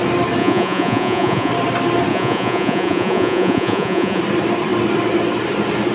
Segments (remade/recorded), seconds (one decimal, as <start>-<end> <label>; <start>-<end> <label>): 0.0-0.4 recorded; 0.4-1.5 remade; 1.5-2.1 recorded; 2.1-4.2 remade; 4.2-5.9 recorded